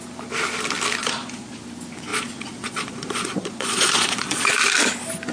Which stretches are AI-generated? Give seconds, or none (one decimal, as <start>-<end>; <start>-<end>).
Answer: 1.0-1.6; 2.1-4.5